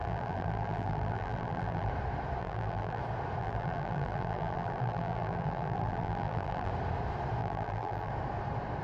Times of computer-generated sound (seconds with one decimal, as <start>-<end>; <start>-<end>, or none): 0.0-1.9; 2.4-3.0; 3.4-6.7; 7.4-8.1